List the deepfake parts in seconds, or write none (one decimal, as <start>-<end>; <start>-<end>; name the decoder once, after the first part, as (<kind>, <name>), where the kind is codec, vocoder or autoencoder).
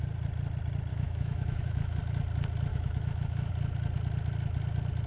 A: 0.9-2.0 (autoencoder, DAC-VAE); 2.7-3.5